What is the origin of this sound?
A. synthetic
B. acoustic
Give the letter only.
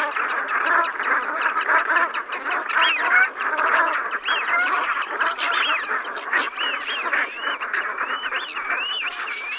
B